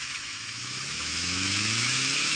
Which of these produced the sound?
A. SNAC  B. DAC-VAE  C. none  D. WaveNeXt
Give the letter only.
B